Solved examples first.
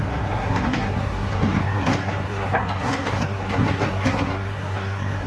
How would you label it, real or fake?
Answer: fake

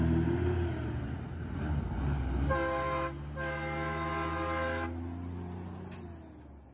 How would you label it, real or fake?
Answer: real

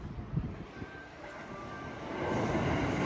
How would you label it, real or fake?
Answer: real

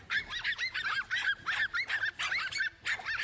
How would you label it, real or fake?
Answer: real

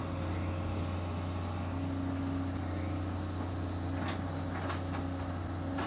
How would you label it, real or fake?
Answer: real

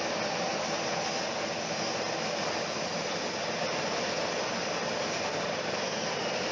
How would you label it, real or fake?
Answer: real